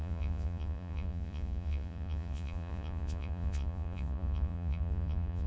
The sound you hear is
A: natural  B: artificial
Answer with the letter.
B